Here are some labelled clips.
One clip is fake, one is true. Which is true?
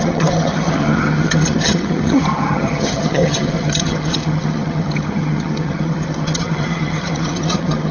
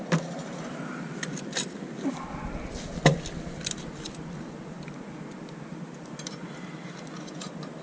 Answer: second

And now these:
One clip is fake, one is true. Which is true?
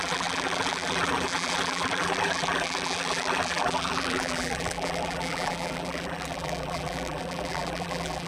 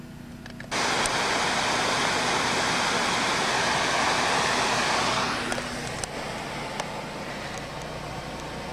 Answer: second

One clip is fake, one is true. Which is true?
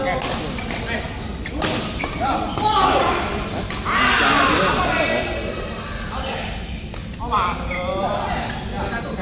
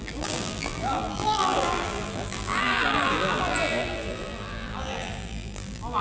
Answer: first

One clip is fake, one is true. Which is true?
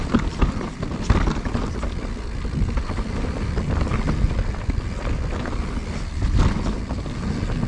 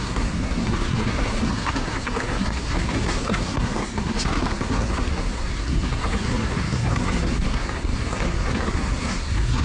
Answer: first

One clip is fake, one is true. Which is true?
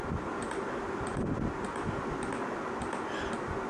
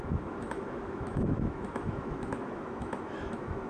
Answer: first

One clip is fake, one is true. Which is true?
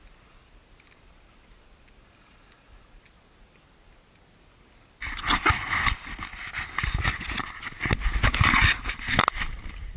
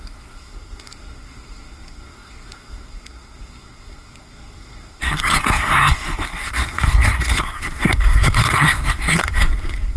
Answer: first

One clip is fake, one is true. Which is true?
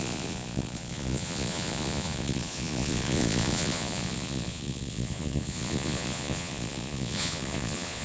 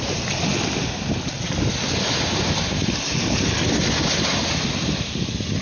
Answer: second